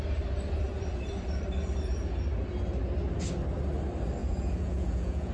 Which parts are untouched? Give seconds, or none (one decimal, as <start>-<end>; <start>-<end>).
0.0-4.2